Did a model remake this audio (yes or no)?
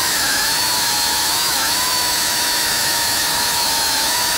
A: yes